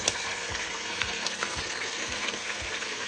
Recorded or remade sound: remade